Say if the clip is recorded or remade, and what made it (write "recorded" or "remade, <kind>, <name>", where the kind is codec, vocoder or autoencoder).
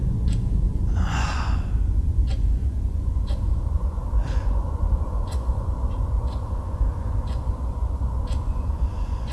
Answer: remade, vocoder, Vocos